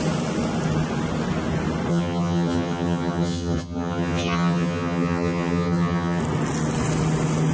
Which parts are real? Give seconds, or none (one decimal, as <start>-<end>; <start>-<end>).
0.0-1.9; 6.2-7.5